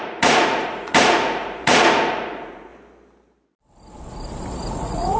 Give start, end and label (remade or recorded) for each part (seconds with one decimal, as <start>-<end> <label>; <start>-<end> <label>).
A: 0.0-2.7 remade; 2.7-4.7 recorded; 4.7-5.2 remade